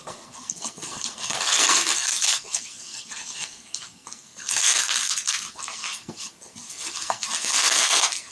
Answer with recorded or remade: remade